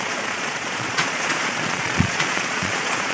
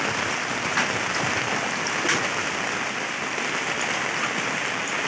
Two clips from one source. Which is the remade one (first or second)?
first